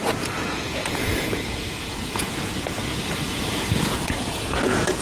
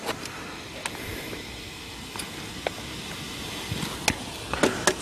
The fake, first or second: first